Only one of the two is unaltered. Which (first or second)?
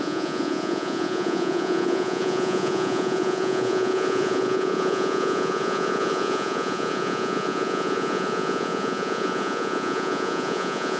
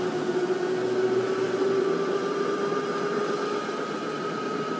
second